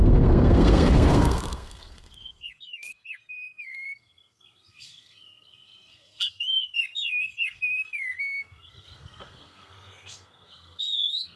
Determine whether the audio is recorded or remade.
remade